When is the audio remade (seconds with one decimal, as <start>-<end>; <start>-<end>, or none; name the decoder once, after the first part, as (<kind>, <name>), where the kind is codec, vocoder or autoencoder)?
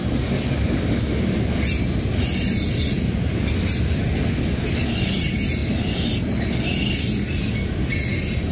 none